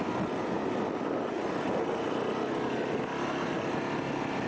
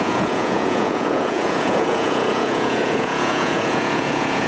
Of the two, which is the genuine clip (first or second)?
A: first